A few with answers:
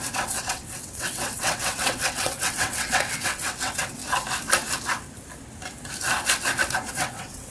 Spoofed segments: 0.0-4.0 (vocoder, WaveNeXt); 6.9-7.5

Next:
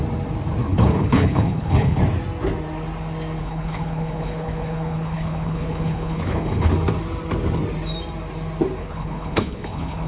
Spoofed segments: 0.7-2.0 (codec, HILCodec); 3.4-6.7; 8.8-10.1

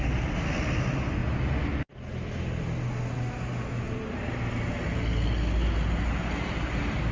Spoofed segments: none

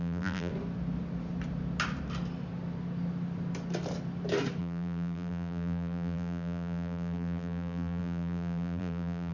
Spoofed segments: 0.0-0.5 (vocoder, BigVGAN v2); 4.6-9.3

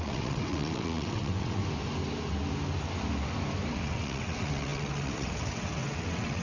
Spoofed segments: 0.0-1.6 (vocoder, WaveNeXt); 3.7-6.4

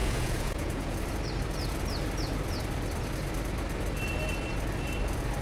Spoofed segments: 0.0-1.0 (vocoder, Vocos)

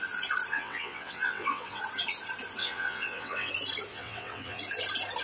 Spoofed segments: 0.5-1.8 (vocoder, WaveNeXt); 2.6-3.5; 3.9-4.6

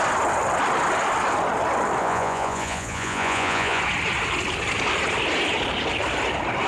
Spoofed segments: 2.0-3.8 (vocoder, Vocos)